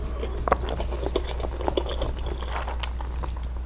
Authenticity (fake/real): real